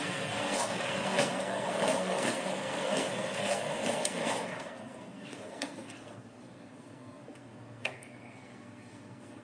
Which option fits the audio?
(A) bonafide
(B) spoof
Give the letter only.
B